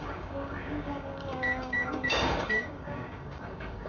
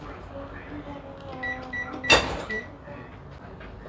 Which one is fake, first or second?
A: first